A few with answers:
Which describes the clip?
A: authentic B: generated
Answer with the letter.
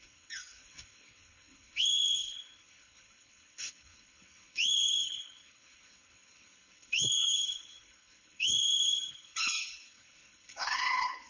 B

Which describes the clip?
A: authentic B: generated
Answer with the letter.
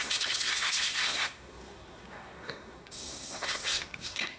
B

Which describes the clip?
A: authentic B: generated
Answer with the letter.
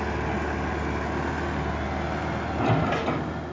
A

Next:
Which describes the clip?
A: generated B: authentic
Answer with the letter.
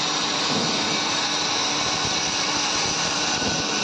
B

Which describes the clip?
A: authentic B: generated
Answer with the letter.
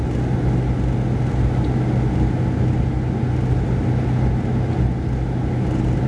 A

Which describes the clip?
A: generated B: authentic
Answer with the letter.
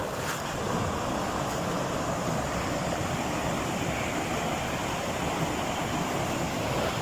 B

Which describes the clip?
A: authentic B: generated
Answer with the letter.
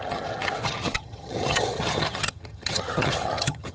B